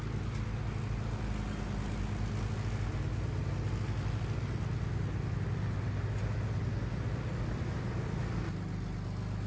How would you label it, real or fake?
real